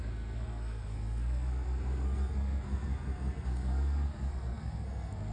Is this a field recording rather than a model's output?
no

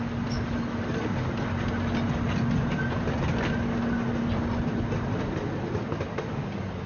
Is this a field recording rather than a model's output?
yes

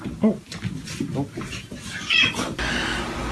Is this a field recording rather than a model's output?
yes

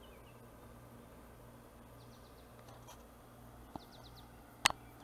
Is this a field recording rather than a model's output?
yes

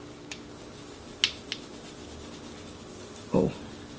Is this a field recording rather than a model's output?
yes